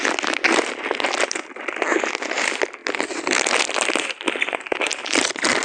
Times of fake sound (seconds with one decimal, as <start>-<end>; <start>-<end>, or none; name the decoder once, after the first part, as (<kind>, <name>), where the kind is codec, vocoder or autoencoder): none